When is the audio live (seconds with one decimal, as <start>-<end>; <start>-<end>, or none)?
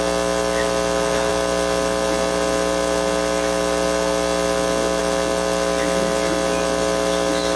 0.0-7.6